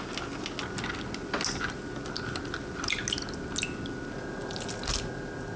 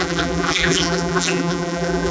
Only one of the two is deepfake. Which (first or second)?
second